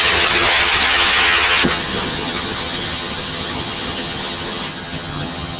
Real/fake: fake